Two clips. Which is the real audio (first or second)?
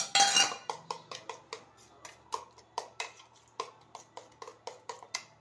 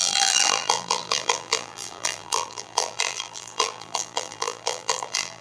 first